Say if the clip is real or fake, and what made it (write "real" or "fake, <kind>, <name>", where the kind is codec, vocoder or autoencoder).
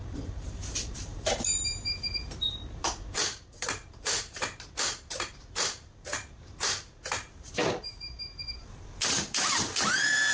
fake, vocoder, BigVGAN v2